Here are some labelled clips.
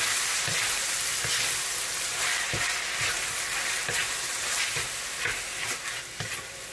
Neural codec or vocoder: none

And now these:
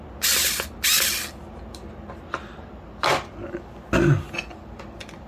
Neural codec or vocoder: none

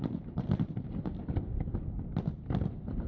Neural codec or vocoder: vocoder, BigVGAN v2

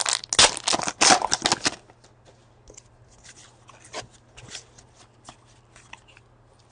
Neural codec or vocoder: none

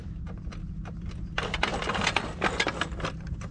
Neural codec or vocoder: vocoder, BigVGAN v2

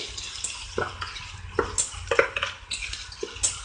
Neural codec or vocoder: none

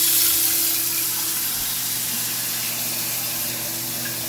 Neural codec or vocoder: none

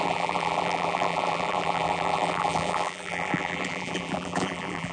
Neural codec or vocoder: vocoder, BigVGAN v2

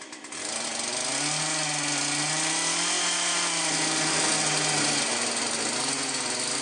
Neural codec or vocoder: none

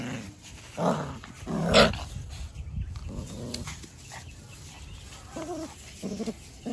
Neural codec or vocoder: none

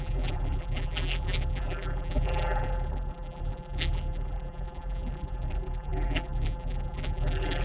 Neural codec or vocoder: vocoder, BigVGAN v2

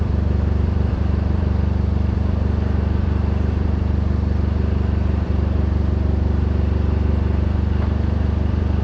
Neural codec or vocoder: vocoder, BigVGAN v2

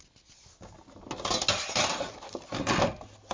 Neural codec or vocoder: none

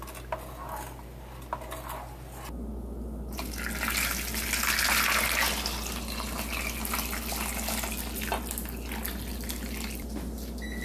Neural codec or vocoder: none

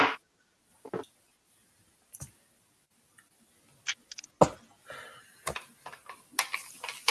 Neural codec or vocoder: none